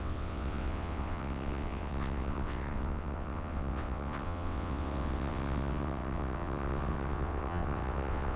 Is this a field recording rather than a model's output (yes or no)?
no